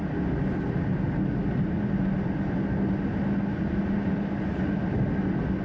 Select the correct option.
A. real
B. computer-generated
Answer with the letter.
A